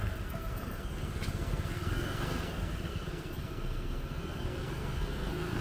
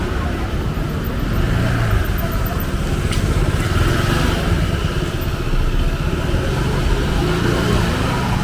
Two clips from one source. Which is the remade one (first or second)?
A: first